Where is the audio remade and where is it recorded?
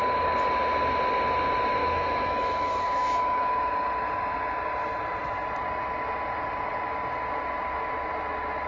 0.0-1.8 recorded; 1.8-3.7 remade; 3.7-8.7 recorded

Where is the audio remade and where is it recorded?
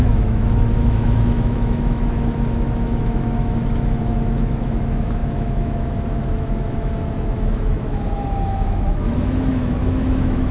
0.0-10.5 remade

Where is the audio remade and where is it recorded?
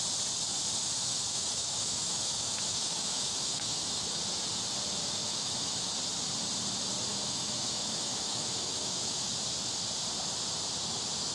0.0-1.0 recorded; 1.0-4.2 remade; 4.2-5.2 recorded; 5.2-5.9 remade; 5.9-7.1 recorded; 7.1-9.3 remade; 9.3-11.3 recorded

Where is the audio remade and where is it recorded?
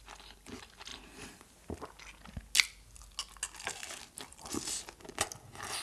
0.0-5.8 recorded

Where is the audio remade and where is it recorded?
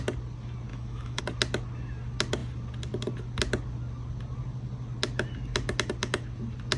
0.0-0.7 recorded; 0.7-1.2 remade; 1.2-6.8 recorded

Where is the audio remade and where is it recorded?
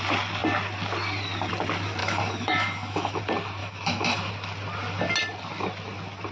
0.0-2.0 recorded; 2.0-3.2 remade; 3.2-3.6 recorded; 3.6-4.3 remade; 4.3-6.3 recorded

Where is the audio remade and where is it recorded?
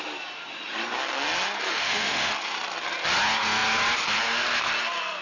0.0-1.7 recorded; 1.7-2.3 remade; 2.3-5.2 recorded